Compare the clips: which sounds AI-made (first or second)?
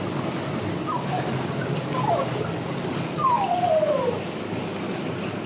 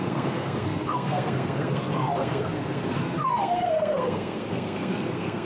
second